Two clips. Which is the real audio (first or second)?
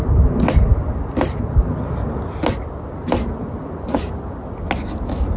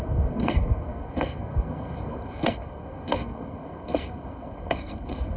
first